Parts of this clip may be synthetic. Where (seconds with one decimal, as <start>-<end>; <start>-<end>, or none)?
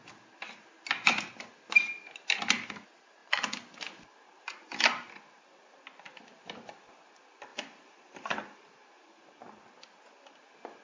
7.5-9.2